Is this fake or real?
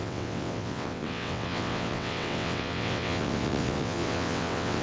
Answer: fake